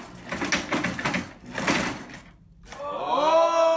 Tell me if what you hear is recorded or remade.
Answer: recorded